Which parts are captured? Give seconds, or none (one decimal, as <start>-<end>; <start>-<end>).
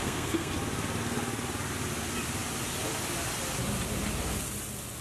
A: 0.5-5.0